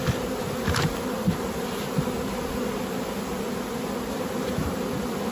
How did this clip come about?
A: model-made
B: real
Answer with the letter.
B